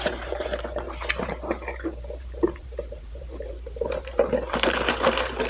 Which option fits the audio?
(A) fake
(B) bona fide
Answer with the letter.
A